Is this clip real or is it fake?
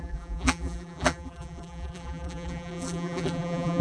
fake